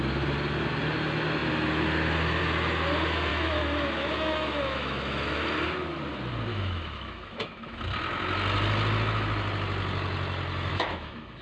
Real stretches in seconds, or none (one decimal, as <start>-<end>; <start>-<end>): 0.0-3.3; 5.4-6.5; 7.8-10.7